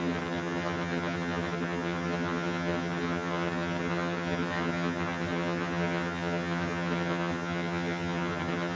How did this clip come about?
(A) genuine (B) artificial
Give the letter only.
B